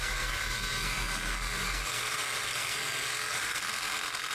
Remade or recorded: remade